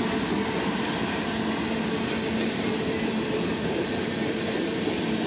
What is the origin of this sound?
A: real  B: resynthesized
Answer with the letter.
A